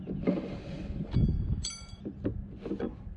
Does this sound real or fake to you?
real